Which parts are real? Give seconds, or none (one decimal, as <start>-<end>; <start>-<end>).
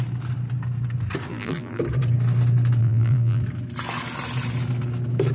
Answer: 0.0-1.3; 1.8-2.8; 3.4-5.3